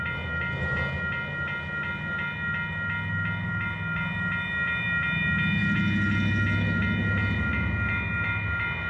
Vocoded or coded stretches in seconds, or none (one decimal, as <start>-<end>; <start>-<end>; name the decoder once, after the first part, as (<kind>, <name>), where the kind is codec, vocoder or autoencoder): none